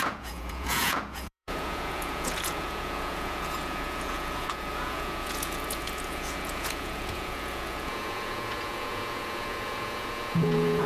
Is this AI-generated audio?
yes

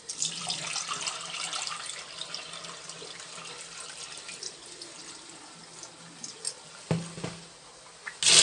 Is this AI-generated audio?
no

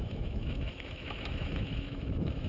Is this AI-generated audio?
yes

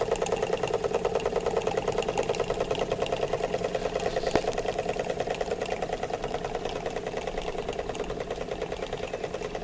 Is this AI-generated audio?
no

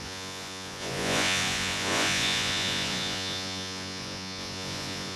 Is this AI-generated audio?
yes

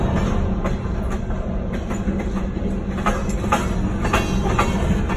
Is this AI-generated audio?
no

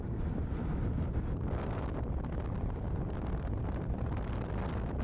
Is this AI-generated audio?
no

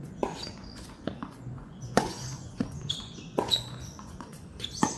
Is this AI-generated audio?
yes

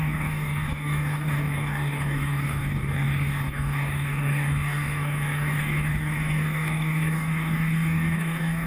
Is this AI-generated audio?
yes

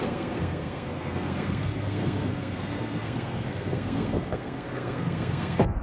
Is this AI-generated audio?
yes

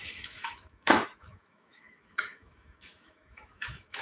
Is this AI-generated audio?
yes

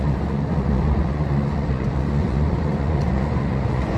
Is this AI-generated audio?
yes